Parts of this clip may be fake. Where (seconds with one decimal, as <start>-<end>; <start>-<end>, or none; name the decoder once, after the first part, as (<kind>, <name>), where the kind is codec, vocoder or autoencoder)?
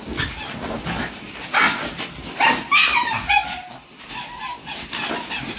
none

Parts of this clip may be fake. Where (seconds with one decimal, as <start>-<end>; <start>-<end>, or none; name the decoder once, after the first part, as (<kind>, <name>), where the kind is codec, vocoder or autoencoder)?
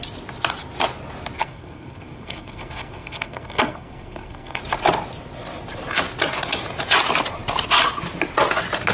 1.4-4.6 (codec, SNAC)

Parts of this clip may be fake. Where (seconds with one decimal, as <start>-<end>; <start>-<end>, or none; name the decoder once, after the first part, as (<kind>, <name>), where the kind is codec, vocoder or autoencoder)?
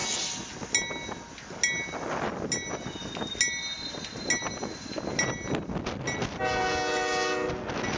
none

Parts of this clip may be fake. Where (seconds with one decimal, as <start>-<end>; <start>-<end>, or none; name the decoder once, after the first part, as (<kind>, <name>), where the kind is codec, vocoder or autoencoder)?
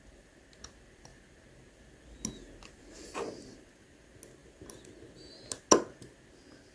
none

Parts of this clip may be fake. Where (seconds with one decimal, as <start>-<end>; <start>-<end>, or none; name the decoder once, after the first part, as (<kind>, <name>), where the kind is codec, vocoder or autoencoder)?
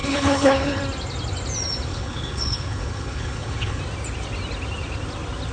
0.0-0.8 (codec, HILCodec); 1.9-3.8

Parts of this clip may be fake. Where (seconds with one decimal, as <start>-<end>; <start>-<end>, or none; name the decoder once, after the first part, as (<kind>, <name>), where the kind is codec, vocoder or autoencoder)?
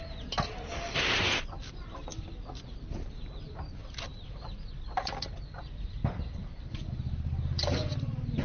6.0-6.9 (vocoder, BigVGAN v2)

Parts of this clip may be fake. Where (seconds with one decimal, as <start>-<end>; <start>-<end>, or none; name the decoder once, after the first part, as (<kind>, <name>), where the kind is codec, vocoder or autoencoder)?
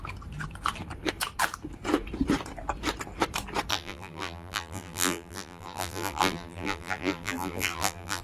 3.7-8.2 (vocoder, BigVGAN v2)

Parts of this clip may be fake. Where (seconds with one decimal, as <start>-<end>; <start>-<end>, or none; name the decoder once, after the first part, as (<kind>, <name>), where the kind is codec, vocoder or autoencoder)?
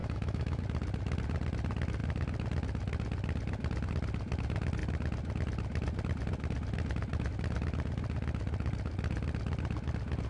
0.0-0.6 (autoencoder, DAC-VAE)